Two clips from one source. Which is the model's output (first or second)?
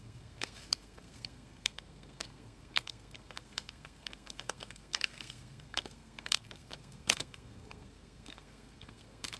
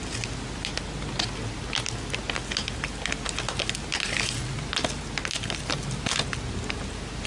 first